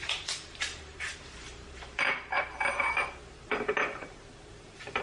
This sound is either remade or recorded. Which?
remade